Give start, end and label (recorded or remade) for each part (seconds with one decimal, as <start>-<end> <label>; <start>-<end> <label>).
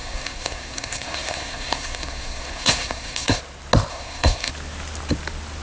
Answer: 0.0-3.4 remade; 3.4-3.9 recorded; 3.9-4.5 remade; 4.5-5.6 recorded